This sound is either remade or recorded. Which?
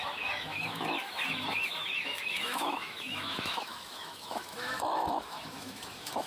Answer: remade